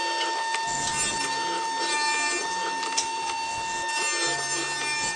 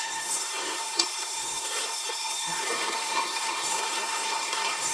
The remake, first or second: second